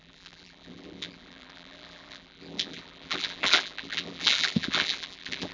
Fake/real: fake